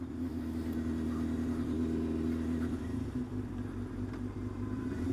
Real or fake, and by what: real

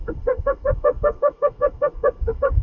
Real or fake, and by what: fake, codec, SNAC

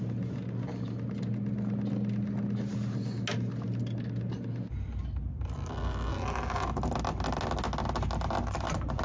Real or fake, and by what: real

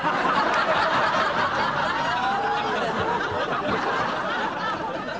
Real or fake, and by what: real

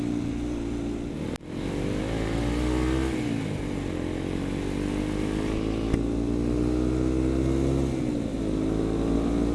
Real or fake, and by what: real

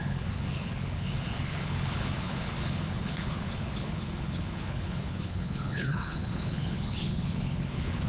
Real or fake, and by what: fake, codec, HILCodec